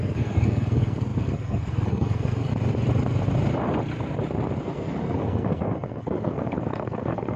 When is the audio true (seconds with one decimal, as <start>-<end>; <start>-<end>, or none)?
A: 2.5-4.6